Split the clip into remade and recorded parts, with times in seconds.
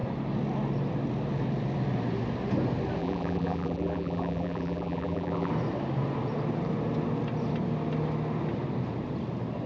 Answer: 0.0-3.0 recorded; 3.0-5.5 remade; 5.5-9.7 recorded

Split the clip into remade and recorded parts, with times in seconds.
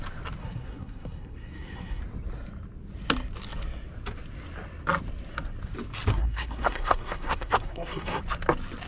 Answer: 0.0-0.4 recorded; 0.4-2.0 remade; 2.0-6.1 recorded; 6.1-8.2 remade; 8.2-8.9 recorded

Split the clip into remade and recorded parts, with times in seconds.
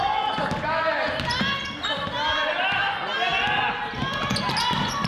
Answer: 0.0-5.1 recorded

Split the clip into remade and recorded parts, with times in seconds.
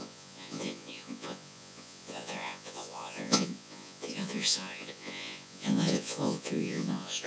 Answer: 0.0-7.3 remade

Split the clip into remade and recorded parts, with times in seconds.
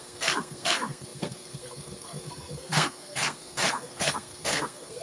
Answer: 0.0-5.0 remade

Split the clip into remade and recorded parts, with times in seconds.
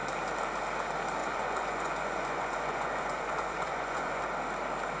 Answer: 0.0-1.2 recorded; 1.2-4.2 remade; 4.2-5.0 recorded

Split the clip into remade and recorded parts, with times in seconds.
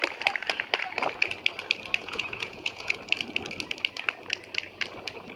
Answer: 0.0-2.0 recorded; 2.0-3.0 remade; 3.0-5.4 recorded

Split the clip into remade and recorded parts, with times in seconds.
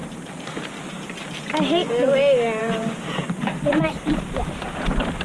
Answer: 0.0-0.5 remade; 0.5-2.6 recorded; 2.6-4.1 remade; 4.1-5.2 recorded